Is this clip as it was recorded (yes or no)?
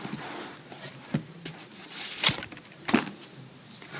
yes